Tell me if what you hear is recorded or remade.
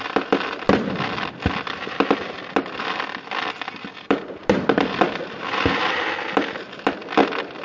recorded